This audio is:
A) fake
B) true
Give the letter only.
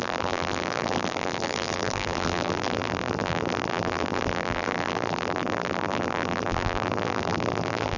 A